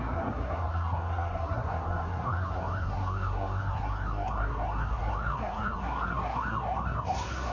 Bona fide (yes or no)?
no